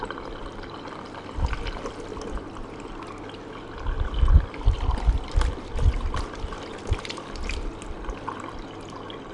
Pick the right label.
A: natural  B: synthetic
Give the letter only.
A